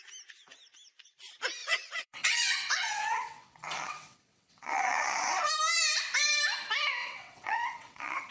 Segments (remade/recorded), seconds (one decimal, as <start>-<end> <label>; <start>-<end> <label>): 0.0-1.6 recorded; 1.6-5.5 remade; 5.5-7.0 recorded; 7.0-8.3 remade